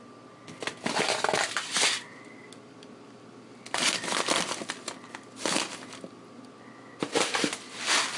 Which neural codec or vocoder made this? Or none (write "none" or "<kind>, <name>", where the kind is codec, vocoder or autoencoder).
none